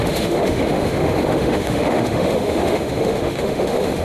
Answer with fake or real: fake